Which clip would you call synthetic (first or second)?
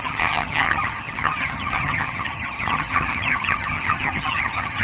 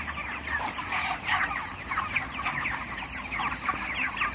first